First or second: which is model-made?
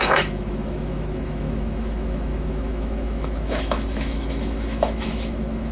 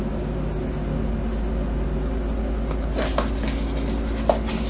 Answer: first